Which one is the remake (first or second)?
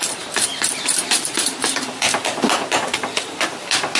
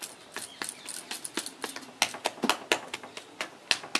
first